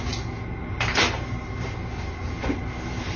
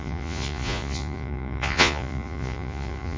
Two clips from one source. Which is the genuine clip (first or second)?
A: first